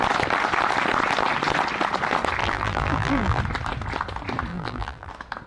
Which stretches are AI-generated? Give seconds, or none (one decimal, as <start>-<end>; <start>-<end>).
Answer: 2.4-3.4; 4.5-5.1